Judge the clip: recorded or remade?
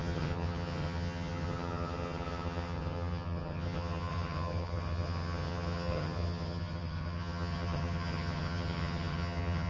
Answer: remade